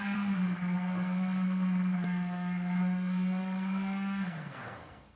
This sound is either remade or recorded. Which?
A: remade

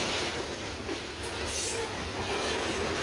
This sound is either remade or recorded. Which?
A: recorded